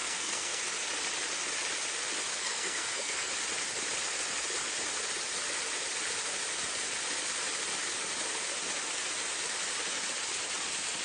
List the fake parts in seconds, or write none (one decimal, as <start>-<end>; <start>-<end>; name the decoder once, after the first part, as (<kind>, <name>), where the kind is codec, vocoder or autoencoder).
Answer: 0.0-0.6 (codec, SNAC); 2.3-3.3

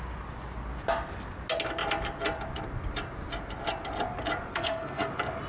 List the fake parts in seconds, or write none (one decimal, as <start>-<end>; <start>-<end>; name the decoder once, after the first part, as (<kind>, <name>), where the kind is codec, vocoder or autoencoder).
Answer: 4.5-5.1 (codec, SNAC)

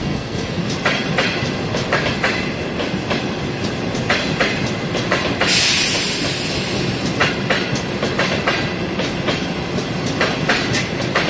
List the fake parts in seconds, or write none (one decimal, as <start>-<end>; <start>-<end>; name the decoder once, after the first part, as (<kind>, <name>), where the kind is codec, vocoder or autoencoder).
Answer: 0.0-0.6 (codec, SNAC)